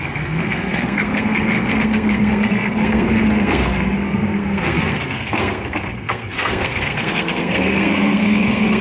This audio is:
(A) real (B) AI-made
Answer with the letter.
B